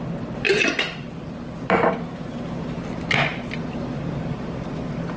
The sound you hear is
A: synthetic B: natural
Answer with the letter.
B